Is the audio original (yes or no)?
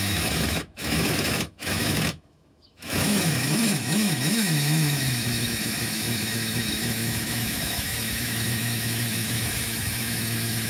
no